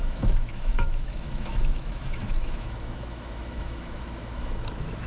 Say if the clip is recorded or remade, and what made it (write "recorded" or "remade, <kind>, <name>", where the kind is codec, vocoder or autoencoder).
remade, autoencoder, DAC-VAE